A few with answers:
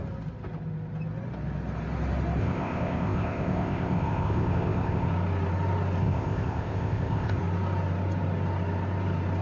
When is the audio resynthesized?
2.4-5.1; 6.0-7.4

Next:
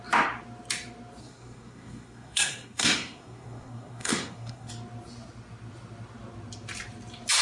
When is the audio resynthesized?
1.2-4.7